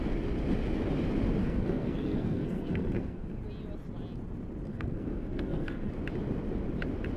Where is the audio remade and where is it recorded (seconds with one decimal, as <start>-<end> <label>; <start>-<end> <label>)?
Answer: 0.0-1.4 recorded; 1.4-3.4 remade; 3.4-4.7 recorded; 4.7-5.9 remade; 5.9-7.2 recorded